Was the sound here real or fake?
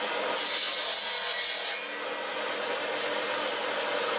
real